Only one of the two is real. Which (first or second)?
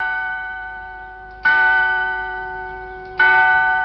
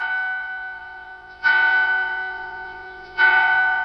first